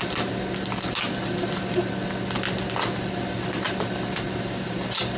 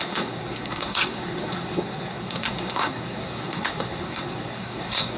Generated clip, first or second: second